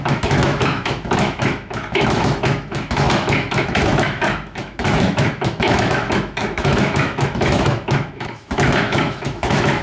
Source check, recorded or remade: remade